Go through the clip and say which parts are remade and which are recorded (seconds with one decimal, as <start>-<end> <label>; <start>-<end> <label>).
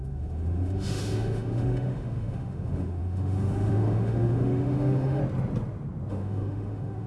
0.0-5.2 remade; 5.2-6.1 recorded; 6.1-7.1 remade